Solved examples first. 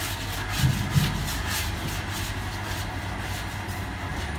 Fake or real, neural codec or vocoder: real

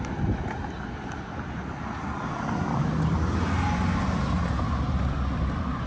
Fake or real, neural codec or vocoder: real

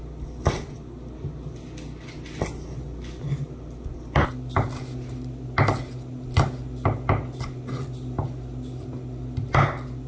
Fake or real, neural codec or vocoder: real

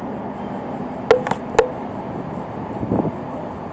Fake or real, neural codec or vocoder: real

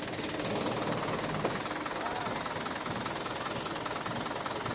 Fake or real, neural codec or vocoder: real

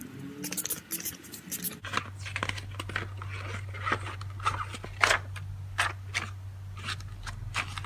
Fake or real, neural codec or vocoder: real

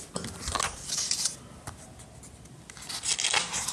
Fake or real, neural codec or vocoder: real